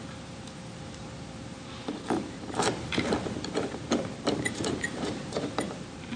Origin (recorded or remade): remade